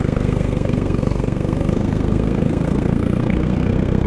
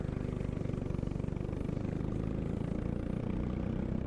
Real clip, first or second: second